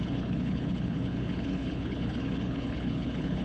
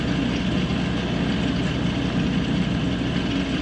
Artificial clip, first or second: first